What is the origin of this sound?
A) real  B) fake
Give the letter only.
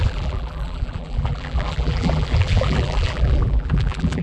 B